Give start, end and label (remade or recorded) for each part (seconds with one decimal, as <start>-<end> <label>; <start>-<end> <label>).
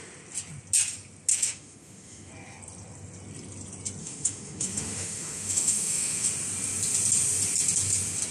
0.0-1.3 recorded; 1.3-2.3 remade; 2.3-4.0 recorded; 4.0-6.3 remade; 6.3-8.3 recorded